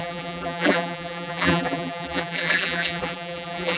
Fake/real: fake